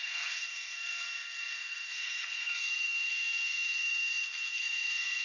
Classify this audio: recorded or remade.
remade